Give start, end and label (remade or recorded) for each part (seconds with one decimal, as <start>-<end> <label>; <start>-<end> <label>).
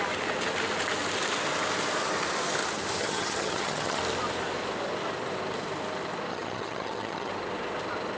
0.0-3.0 recorded; 3.0-4.0 remade; 4.0-6.3 recorded; 6.3-7.3 remade; 7.3-8.2 recorded